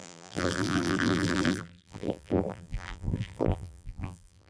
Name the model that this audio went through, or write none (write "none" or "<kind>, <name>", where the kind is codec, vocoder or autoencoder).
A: vocoder, BigVGAN v2